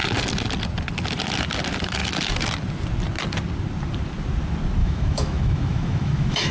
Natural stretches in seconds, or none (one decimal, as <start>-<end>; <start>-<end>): 0.0-4.8